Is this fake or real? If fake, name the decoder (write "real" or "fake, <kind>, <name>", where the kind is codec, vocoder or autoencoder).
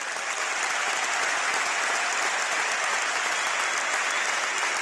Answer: real